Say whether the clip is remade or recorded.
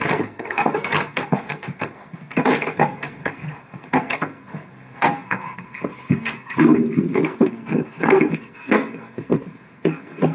remade